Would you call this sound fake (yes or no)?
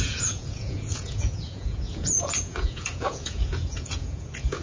yes